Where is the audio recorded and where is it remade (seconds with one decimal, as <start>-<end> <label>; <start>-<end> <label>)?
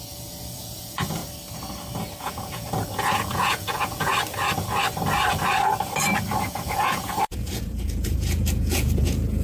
0.0-1.2 remade; 1.2-2.2 recorded; 2.2-4.1 remade; 4.1-6.4 recorded; 6.4-9.4 remade